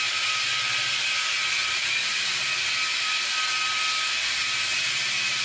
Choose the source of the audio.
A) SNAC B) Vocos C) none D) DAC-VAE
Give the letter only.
C